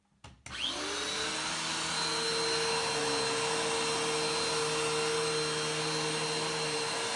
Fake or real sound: real